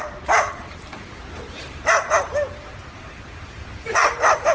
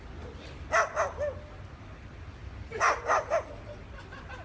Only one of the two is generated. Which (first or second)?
first